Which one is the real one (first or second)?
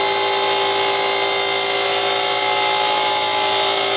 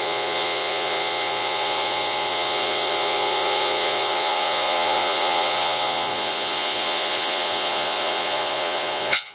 first